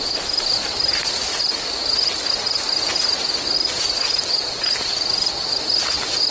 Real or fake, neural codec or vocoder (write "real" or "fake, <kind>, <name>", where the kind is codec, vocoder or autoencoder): real